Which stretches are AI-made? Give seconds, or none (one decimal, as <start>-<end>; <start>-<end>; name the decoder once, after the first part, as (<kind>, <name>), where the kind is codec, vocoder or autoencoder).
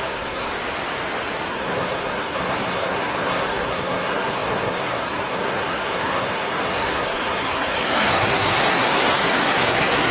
0.0-0.5 (codec, SNAC); 1.5-10.1